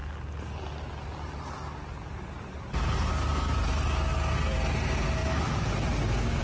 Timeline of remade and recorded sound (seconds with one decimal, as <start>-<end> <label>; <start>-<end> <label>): 0.0-6.4 recorded